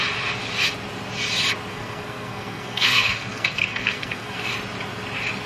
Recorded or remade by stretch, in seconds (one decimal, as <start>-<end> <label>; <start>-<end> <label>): 0.0-1.7 recorded; 1.7-4.5 remade; 4.5-5.5 recorded